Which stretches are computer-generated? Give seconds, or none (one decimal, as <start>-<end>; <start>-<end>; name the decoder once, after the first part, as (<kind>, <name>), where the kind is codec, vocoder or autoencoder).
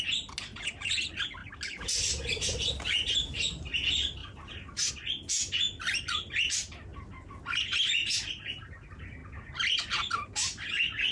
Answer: 4.2-4.9 (vocoder, BigVGAN v2)